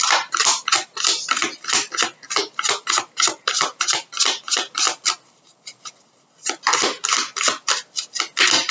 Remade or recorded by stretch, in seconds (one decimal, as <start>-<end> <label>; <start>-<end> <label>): 0.0-2.4 recorded; 2.4-4.7 remade; 4.7-8.7 recorded